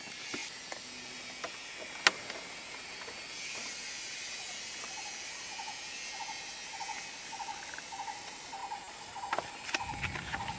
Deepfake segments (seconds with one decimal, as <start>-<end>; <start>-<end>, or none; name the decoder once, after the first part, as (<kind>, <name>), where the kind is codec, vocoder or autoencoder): none